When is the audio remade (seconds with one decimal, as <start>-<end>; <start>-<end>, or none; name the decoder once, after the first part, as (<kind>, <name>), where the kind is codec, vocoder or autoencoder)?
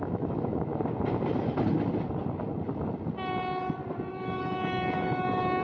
0.0-0.7 (autoencoder, DAC-VAE); 4.1-5.6